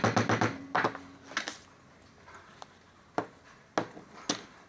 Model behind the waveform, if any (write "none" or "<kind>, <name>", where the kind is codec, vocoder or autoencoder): none